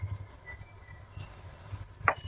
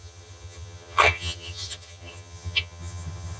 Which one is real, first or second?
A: first